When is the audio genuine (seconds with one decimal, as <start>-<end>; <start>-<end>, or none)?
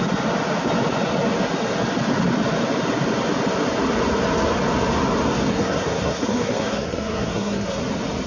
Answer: 0.0-5.5; 7.8-8.3